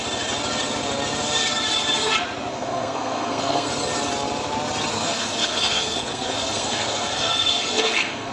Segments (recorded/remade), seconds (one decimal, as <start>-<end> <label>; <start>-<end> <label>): 0.0-2.5 recorded; 2.5-3.7 remade; 3.7-4.9 recorded; 4.9-8.3 remade